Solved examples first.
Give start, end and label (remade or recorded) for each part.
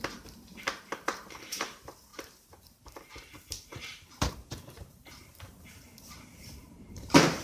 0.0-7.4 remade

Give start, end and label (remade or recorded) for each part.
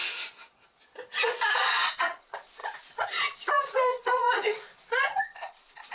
0.0-1.5 recorded; 1.5-5.9 remade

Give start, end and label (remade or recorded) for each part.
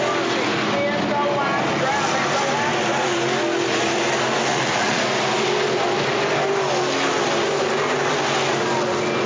0.0-4.5 recorded; 4.5-5.0 remade; 5.0-9.3 recorded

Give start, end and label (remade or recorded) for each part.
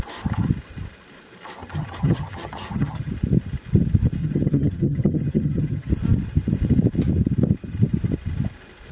0.0-1.6 recorded; 1.6-3.1 remade; 3.1-4.2 recorded; 4.2-5.9 remade; 5.9-8.9 recorded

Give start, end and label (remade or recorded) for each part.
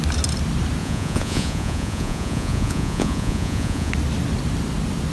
0.0-0.8 recorded; 0.8-3.9 remade; 3.9-5.1 recorded